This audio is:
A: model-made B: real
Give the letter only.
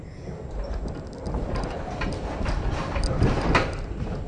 B